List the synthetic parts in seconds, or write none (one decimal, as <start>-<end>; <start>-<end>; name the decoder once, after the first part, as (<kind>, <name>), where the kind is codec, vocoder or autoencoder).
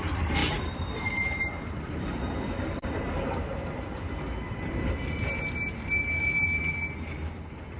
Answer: 0.4-4.1 (vocoder, BigVGAN v2)